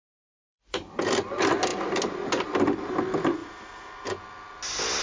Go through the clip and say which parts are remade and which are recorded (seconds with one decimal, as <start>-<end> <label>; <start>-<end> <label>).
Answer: 0.0-0.4 recorded; 0.4-1.0 remade; 1.0-3.4 recorded; 3.4-4.2 remade; 4.2-5.0 recorded